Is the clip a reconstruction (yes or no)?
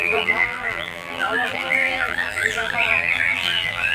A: yes